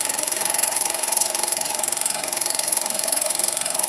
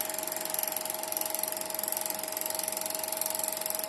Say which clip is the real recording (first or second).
second